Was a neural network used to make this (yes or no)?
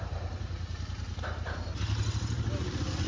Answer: no